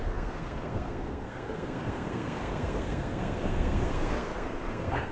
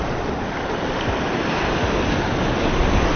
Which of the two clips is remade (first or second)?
first